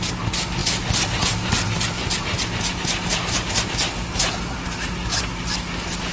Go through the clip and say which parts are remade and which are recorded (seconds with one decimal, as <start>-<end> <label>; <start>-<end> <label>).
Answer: 0.0-0.6 recorded; 0.6-4.3 remade; 4.3-6.1 recorded